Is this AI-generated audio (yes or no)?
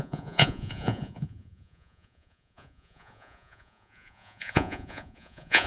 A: yes